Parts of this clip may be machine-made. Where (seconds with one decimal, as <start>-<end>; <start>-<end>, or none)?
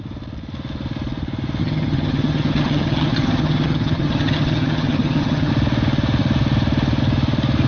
1.6-5.5